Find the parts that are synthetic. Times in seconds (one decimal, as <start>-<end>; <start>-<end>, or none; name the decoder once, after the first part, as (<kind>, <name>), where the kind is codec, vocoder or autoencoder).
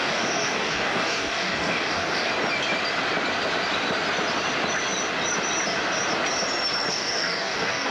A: 0.0-2.3 (codec, DAC); 6.9-7.9